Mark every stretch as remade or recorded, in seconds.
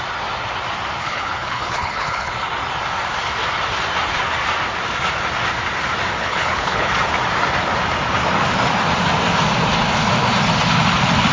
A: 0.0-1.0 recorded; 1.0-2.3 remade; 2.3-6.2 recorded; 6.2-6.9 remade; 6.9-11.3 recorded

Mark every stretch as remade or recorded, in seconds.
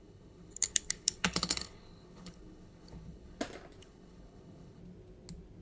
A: 0.0-3.4 remade; 3.4-3.8 recorded; 3.8-4.8 remade; 4.8-5.6 recorded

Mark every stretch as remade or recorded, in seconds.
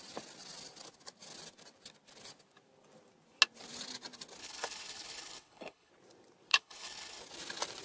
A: 0.0-4.4 recorded; 4.4-5.9 remade; 5.9-6.5 recorded; 6.5-7.2 remade; 7.2-7.8 recorded